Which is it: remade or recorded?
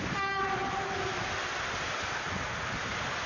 recorded